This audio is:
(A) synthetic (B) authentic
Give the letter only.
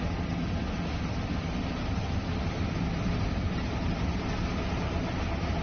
B